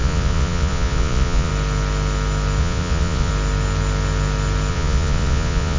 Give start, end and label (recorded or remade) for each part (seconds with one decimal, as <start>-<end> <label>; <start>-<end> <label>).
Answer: 0.0-1.5 remade; 1.5-2.6 recorded; 2.6-3.3 remade; 3.3-4.7 recorded; 4.7-5.8 remade